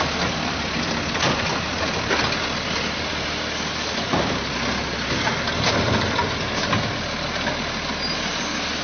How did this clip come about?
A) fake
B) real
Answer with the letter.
B